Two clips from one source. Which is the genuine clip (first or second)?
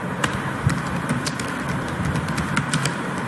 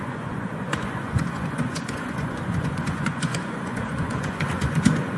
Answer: first